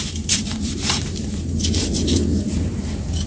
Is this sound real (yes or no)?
no